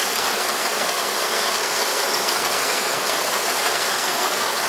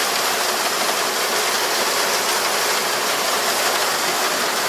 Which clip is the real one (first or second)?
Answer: second